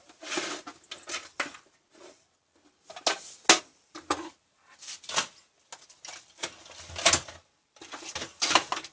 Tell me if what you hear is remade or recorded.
recorded